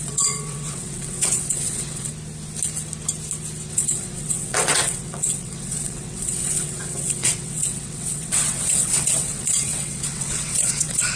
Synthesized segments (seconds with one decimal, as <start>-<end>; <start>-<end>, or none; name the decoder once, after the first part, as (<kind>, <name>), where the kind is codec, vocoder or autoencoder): 0.0-2.1 (vocoder, WaveNeXt); 3.7-11.2